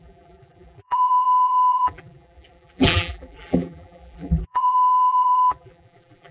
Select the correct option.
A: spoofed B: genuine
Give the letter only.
A